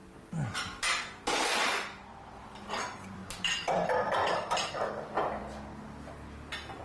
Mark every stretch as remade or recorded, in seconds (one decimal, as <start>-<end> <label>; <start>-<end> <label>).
0.0-1.5 recorded; 1.5-5.4 remade; 5.4-6.8 recorded